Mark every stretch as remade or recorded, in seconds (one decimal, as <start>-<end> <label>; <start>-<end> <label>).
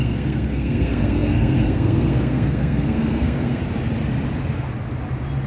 0.0-3.6 remade; 3.6-5.5 recorded